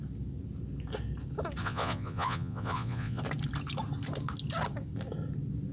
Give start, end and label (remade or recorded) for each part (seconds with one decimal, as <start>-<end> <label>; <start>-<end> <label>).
0.0-1.6 recorded; 1.6-3.2 remade; 3.2-5.7 recorded